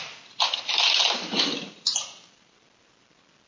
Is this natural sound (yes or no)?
no